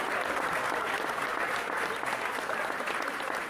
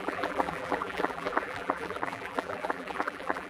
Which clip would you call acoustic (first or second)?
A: first